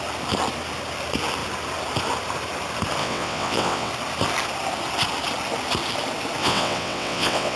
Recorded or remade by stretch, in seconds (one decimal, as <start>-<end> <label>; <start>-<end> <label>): 0.0-3.0 recorded; 3.0-3.9 remade; 3.9-6.4 recorded; 6.4-7.6 remade